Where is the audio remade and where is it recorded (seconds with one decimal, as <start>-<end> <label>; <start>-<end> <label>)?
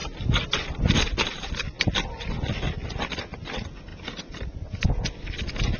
0.0-3.9 recorded; 3.9-4.8 remade; 4.8-5.8 recorded